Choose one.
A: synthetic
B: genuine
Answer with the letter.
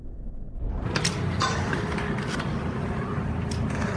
A